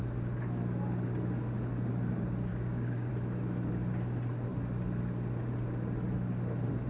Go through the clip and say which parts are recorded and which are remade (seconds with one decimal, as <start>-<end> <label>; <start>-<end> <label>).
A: 0.0-2.5 recorded; 2.5-3.1 remade; 3.1-6.9 recorded